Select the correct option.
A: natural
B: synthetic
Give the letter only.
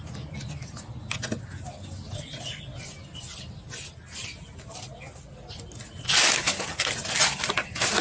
A